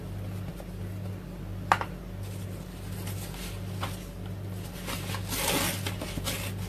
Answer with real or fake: real